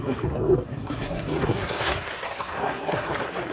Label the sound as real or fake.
fake